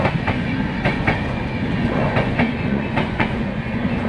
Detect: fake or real fake